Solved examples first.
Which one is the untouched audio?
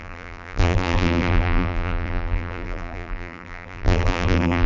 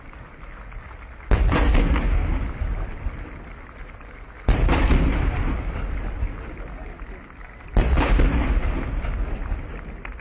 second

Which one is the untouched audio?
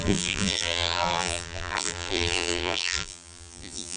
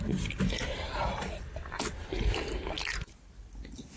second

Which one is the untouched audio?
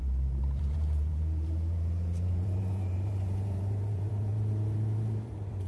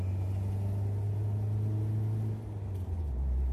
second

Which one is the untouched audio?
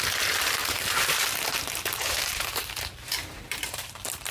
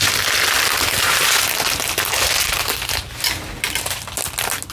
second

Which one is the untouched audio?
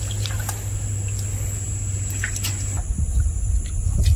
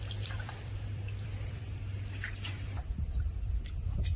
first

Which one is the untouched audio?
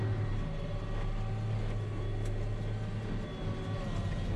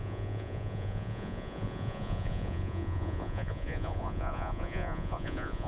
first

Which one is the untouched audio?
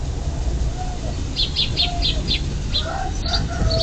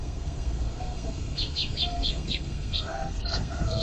first